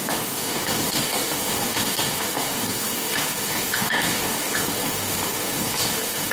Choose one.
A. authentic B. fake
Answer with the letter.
B